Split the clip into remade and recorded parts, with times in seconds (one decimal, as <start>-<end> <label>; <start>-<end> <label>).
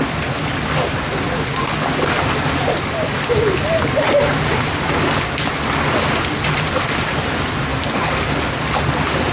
0.0-9.3 recorded